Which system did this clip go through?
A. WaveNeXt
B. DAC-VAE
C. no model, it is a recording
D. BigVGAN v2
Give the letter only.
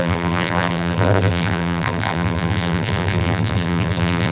D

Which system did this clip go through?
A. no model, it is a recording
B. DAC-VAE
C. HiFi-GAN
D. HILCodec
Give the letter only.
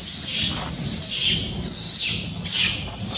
A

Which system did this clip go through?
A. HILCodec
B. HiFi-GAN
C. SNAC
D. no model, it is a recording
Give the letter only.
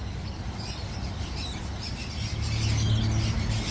D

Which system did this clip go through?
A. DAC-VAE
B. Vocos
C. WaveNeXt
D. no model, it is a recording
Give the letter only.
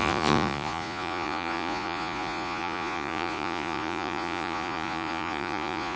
B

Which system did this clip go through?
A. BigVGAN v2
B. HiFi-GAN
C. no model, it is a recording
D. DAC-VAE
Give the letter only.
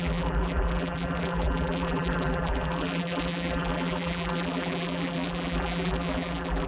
A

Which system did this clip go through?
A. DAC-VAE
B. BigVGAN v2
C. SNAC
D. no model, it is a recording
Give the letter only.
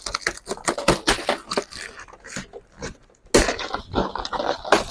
D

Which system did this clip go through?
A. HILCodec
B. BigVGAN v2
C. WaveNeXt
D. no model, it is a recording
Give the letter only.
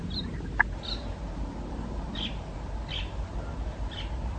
D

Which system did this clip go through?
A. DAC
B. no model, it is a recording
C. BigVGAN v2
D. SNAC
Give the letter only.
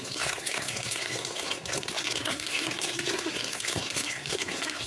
D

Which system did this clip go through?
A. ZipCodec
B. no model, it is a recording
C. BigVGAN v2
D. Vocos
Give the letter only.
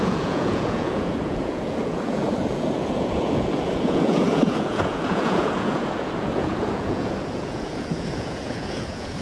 D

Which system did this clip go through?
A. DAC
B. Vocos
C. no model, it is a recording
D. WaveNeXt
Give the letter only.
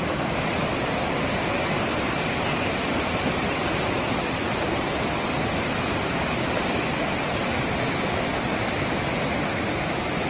C